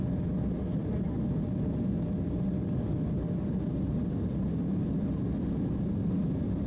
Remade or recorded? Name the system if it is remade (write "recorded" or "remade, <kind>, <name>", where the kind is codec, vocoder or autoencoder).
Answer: recorded